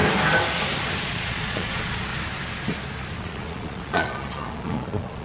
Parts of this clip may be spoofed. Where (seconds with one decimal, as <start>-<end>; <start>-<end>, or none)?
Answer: 1.0-2.1; 3.2-5.2